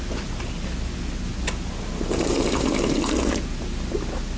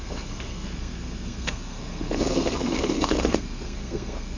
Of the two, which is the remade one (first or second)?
second